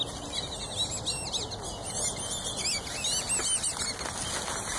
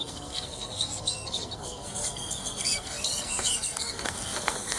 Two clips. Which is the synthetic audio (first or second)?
second